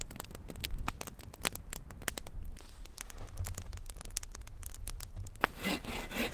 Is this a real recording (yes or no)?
yes